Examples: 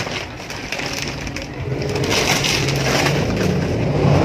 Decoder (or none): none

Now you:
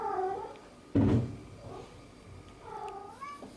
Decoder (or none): none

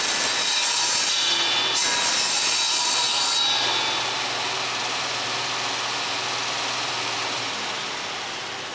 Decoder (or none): none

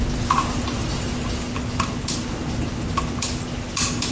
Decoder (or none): none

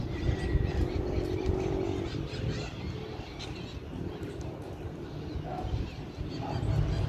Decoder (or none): none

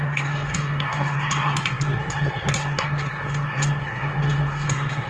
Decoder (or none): codec, SNAC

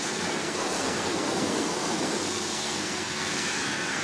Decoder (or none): codec, SNAC